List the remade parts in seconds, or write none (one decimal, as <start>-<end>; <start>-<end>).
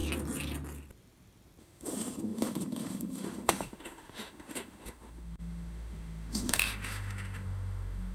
1.6-8.1